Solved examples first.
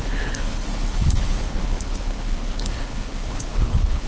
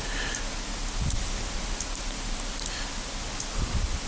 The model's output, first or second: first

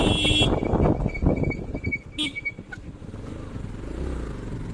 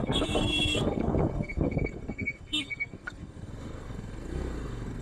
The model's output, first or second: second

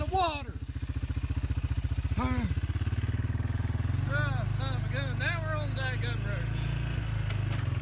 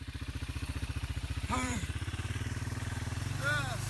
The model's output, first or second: second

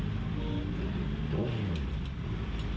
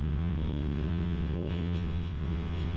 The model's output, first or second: second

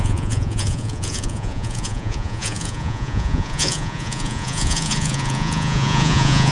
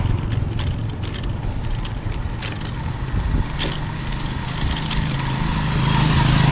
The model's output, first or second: first